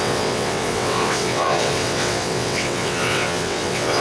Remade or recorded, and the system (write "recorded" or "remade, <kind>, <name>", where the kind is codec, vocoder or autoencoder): remade, vocoder, WaveNeXt